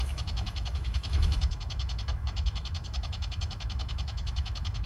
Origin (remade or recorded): remade